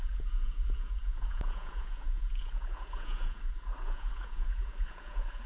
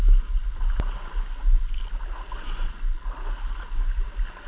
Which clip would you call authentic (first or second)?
second